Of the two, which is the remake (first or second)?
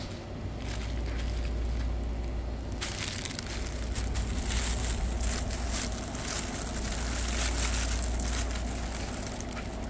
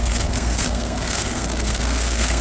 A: second